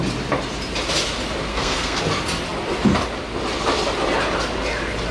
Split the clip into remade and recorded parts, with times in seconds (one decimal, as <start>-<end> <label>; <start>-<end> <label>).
0.0-1.5 recorded; 1.5-2.0 remade; 2.0-5.1 recorded